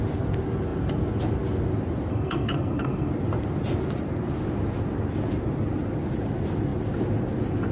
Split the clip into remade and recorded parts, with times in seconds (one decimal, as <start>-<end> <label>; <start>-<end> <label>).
0.0-2.1 recorded; 2.1-3.1 remade; 3.1-7.7 recorded